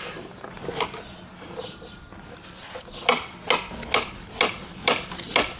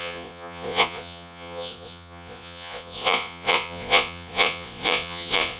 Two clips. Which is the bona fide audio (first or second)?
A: first